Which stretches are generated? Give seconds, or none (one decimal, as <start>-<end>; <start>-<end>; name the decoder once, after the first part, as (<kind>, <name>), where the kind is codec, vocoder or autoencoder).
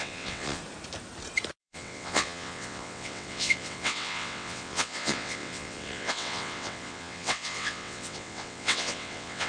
0.0-0.6 (vocoder, WaveNeXt); 1.6-9.5